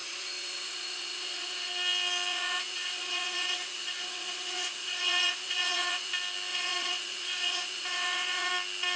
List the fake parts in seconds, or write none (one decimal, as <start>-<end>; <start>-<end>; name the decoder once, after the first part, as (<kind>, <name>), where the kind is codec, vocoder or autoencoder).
0.0-1.7 (vocoder, Vocos); 2.3-6.1; 6.5-8.5